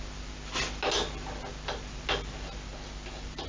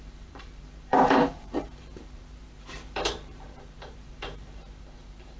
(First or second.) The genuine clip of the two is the first